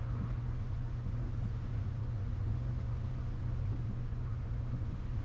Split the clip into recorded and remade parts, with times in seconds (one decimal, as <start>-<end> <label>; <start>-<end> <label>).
0.0-5.2 remade